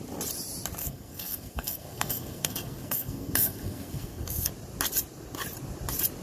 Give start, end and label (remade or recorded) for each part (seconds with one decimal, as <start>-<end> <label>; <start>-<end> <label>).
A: 0.0-0.8 recorded; 0.8-4.5 remade; 4.5-6.2 recorded